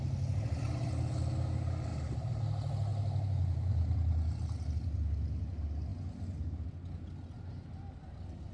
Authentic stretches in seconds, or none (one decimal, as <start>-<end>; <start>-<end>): 0.0-1.9; 2.4-2.9; 3.7-8.5